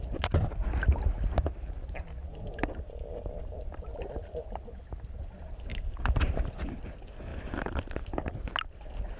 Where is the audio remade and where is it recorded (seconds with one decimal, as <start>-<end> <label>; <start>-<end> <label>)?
0.0-2.3 recorded; 2.3-4.4 remade; 4.4-5.7 recorded; 5.7-6.6 remade; 6.6-7.3 recorded; 7.3-8.3 remade; 8.3-9.2 recorded